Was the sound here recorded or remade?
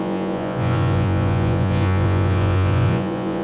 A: remade